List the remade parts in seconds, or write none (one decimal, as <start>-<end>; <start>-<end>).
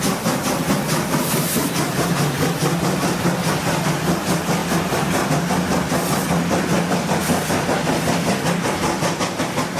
none